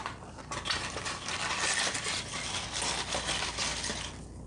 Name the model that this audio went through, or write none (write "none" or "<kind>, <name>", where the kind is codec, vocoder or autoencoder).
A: none